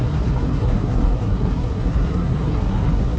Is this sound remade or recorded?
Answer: remade